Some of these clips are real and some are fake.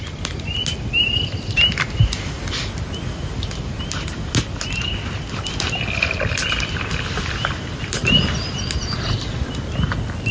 real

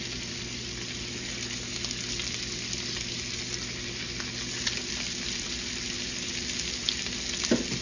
real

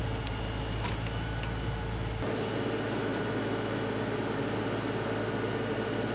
real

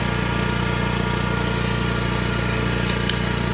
real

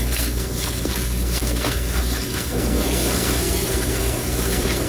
fake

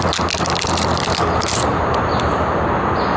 real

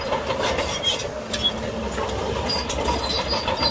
real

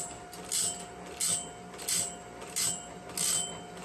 real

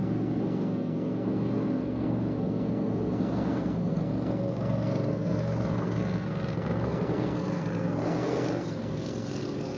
fake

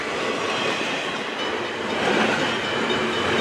real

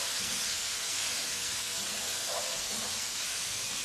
fake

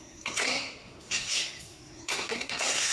fake